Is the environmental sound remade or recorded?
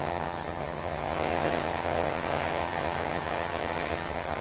remade